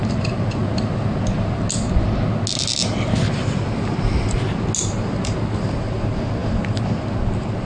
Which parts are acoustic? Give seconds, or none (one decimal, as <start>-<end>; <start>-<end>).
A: 0.0-7.6